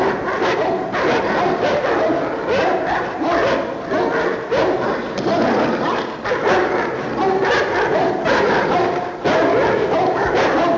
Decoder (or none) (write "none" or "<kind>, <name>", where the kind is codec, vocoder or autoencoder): none